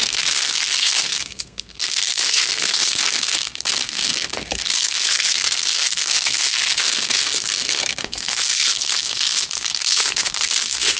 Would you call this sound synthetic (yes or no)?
yes